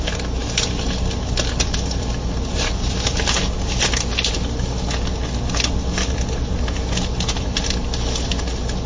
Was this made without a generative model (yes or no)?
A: yes